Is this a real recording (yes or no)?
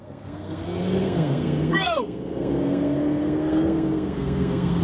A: no